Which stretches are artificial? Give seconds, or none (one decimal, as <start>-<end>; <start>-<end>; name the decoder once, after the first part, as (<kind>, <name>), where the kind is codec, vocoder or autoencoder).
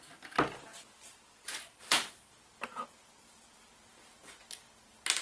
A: none